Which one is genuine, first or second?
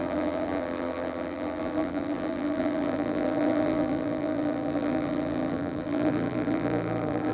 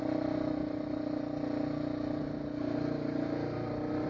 second